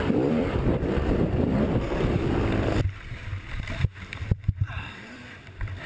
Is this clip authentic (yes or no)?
no